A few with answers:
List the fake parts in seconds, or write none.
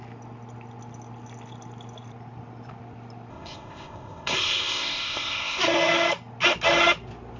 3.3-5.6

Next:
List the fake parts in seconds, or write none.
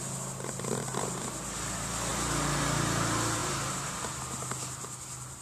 3.4-4.2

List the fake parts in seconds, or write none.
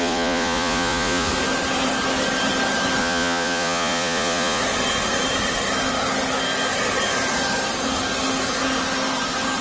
0.0-1.3; 3.0-4.6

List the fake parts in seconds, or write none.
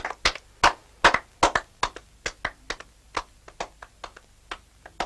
none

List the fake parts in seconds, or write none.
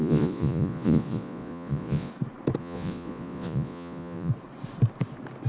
0.0-2.1; 2.6-4.3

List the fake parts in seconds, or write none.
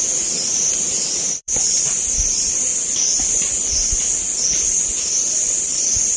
0.0-2.7; 4.8-6.2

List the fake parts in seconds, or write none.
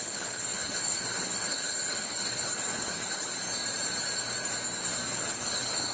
0.0-3.3; 5.1-5.9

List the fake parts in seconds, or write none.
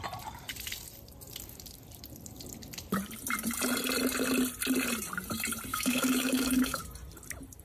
5.7-6.8